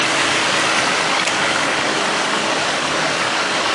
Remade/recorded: remade